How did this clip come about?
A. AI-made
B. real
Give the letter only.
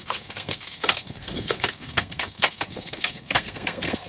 A